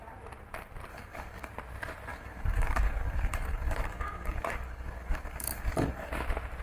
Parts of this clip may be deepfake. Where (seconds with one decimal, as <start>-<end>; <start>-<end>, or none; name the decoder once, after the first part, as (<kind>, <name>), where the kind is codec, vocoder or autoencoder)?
0.9-1.5 (codec, DAC); 2.1-6.1